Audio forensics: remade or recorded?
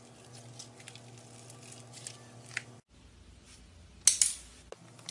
recorded